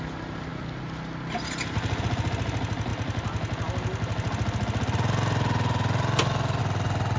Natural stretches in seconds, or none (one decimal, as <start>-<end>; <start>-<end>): 0.0-7.2